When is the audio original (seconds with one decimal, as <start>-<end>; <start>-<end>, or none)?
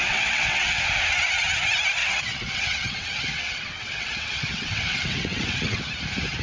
0.8-2.0; 5.8-6.4